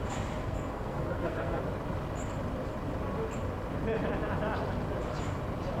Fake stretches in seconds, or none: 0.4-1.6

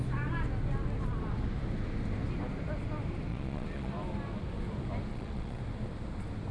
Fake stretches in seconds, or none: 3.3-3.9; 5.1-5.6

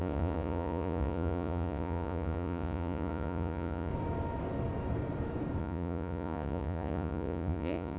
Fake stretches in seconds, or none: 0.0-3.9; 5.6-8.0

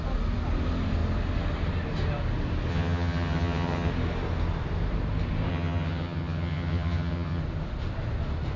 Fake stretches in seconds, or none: 2.7-3.9; 5.5-7.4

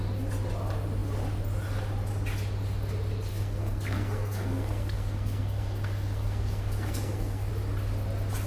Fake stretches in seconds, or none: 3.3-7.5

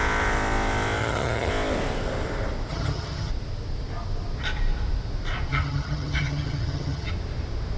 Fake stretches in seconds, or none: 1.0-1.5; 2.7-3.3; 5.5-7.1

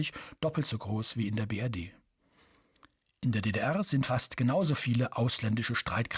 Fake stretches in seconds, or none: none